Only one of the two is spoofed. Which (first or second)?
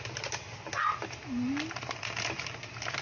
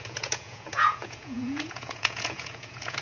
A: second